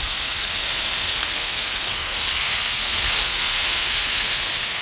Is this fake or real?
fake